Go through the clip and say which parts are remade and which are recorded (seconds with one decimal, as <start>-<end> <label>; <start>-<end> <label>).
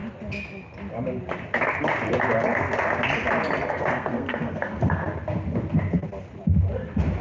0.0-3.7 recorded; 3.7-5.0 remade; 5.0-7.2 recorded